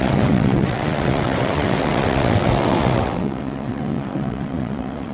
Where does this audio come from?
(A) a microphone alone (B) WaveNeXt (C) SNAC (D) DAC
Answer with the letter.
B